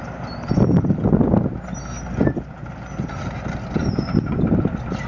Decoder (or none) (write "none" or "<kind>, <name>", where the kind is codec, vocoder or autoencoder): none